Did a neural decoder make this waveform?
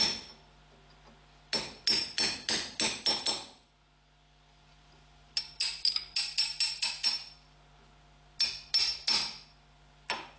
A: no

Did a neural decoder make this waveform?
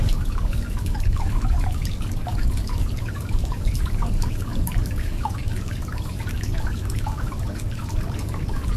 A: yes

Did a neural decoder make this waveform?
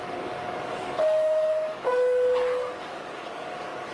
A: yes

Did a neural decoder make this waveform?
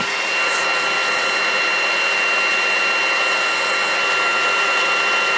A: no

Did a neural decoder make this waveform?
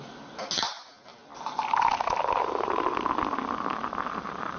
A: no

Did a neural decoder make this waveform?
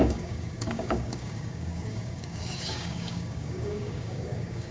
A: yes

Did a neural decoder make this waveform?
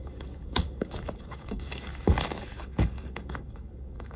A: yes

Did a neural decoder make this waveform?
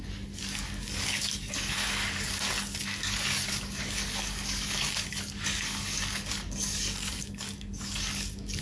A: yes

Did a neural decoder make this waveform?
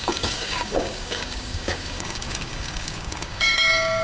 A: yes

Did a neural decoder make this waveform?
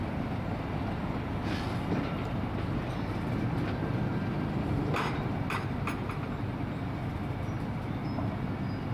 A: no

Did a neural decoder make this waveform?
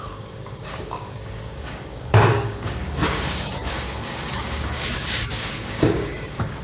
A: yes